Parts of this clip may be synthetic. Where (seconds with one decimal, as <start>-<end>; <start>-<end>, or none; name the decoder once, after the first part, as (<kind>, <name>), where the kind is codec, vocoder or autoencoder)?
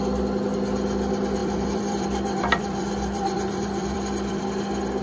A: 1.4-4.4 (vocoder, BigVGAN v2)